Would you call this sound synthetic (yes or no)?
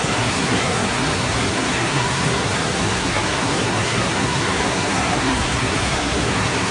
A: yes